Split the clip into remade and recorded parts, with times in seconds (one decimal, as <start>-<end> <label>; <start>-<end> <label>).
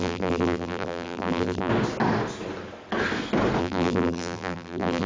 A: 0.0-1.7 remade; 1.7-3.6 recorded; 3.6-5.1 remade